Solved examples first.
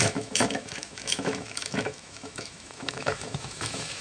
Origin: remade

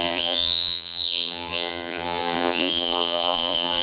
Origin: remade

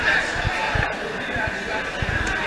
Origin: recorded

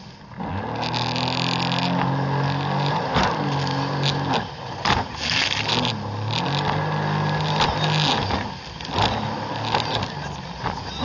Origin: recorded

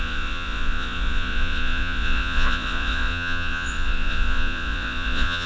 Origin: remade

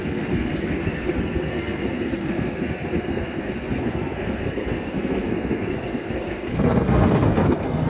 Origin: remade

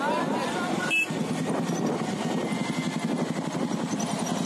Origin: recorded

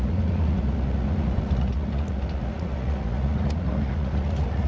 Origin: remade